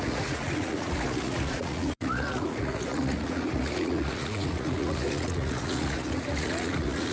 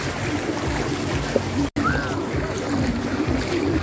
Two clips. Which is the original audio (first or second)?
second